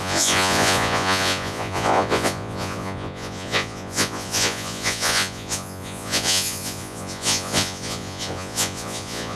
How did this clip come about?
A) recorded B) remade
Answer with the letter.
B